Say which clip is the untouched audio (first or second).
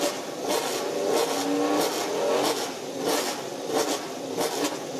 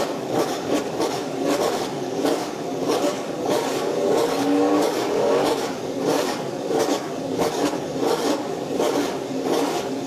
first